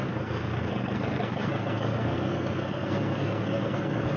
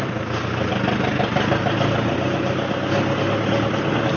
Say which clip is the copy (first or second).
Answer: first